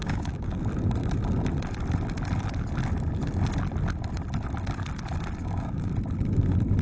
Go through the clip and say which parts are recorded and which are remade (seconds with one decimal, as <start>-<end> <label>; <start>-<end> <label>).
0.0-0.6 remade; 0.6-5.4 recorded; 5.4-5.9 remade; 5.9-6.8 recorded